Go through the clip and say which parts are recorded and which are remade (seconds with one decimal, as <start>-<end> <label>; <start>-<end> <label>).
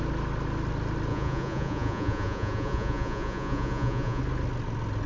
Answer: 0.0-1.1 recorded; 1.1-4.2 remade; 4.2-5.1 recorded